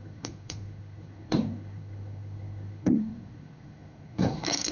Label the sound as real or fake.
fake